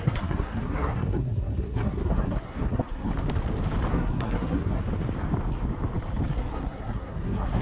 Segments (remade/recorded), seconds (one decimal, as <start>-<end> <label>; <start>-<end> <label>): 0.0-3.1 remade; 3.1-3.9 recorded; 3.9-4.8 remade; 4.8-6.3 recorded; 6.3-7.6 remade